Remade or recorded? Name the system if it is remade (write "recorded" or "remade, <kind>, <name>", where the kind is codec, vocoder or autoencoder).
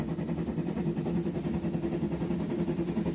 recorded